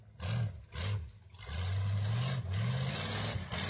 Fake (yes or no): no